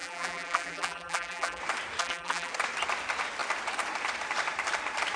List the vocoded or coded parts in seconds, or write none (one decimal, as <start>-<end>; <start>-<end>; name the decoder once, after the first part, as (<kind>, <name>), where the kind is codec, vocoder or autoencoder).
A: 0.0-1.6 (vocoder, BigVGAN v2); 2.0-2.5